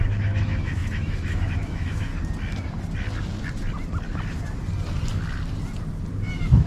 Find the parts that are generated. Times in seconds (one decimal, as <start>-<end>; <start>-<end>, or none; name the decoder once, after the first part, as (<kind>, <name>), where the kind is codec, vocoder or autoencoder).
0.0-2.1 (autoencoder, DAC-VAE); 6.1-6.7